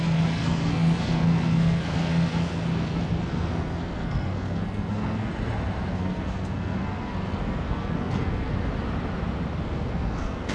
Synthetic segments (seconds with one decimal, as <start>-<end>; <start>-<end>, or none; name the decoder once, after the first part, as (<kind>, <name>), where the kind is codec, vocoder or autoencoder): 0.0-5.3 (codec, SNAC); 5.9-8.5; 9.6-10.5